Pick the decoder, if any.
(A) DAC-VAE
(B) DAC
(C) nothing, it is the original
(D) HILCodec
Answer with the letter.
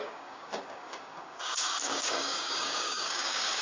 B